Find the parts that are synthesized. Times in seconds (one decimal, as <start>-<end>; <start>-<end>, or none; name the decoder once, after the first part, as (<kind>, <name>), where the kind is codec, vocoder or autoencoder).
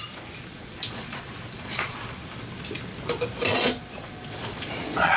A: 0.5-2.0 (vocoder, Vocos); 3.5-5.2